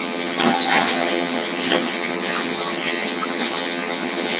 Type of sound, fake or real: fake